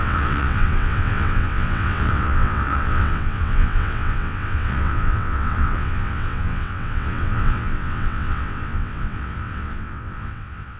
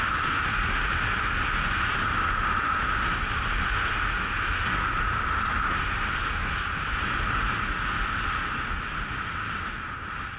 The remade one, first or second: first